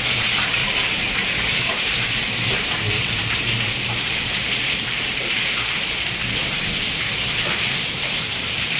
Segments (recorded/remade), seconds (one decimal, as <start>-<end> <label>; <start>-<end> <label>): 0.0-8.8 remade